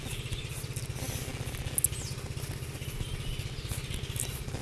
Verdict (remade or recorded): recorded